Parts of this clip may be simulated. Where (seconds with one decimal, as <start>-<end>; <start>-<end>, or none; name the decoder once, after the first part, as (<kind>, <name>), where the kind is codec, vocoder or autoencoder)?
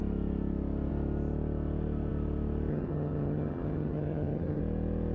2.7-4.6 (vocoder, HiFi-GAN)